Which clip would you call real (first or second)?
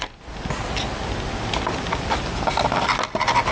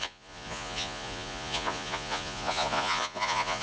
first